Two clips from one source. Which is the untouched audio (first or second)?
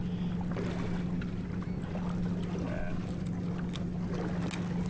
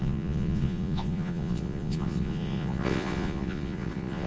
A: first